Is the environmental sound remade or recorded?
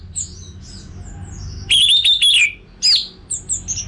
recorded